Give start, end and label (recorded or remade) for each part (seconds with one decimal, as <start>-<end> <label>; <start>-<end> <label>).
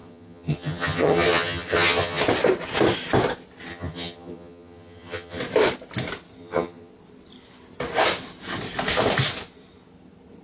0.0-2.2 remade; 2.2-3.7 recorded; 3.7-5.4 remade; 5.4-6.4 recorded; 6.4-6.9 remade; 6.9-10.4 recorded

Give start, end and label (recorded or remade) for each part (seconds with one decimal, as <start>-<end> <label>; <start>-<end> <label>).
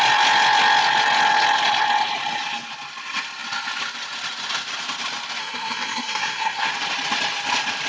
0.0-5.4 recorded; 5.4-6.7 remade; 6.7-7.9 recorded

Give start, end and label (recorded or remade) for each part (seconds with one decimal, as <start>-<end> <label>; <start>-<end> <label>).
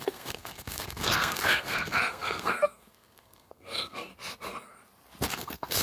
0.0-4.1 remade; 4.1-5.3 recorded; 5.3-5.8 remade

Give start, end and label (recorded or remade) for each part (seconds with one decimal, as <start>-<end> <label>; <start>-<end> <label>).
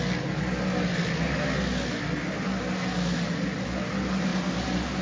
0.0-5.0 recorded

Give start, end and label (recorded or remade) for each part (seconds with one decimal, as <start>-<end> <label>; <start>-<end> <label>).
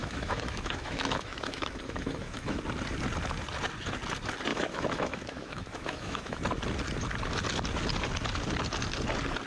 0.0-2.6 remade; 2.6-4.5 recorded; 4.5-6.4 remade; 6.4-9.5 recorded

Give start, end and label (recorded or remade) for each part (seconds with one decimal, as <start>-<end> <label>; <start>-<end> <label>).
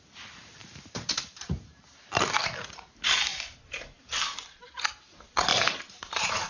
0.0-0.6 recorded; 0.6-2.3 remade; 2.3-3.3 recorded; 3.3-4.7 remade; 4.7-5.5 recorded; 5.5-6.5 remade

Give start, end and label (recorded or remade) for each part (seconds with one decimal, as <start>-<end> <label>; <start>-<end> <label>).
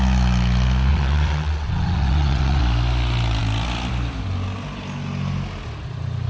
0.0-0.9 recorded; 0.9-2.6 remade; 2.6-6.3 recorded